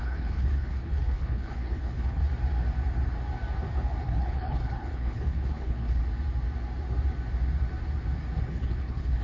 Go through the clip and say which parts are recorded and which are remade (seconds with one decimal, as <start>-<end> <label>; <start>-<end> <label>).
0.0-2.2 remade; 2.2-4.0 recorded; 4.0-6.0 remade; 6.0-8.4 recorded; 8.4-9.2 remade

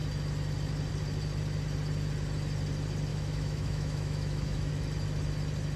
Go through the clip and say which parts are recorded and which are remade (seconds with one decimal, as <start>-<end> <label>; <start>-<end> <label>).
0.0-3.1 recorded; 3.1-4.7 remade; 4.7-5.8 recorded

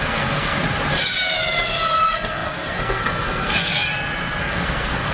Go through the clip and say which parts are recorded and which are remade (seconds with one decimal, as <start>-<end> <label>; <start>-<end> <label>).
0.0-0.6 remade; 0.6-2.0 recorded; 2.0-3.8 remade; 3.8-4.4 recorded; 4.4-5.1 remade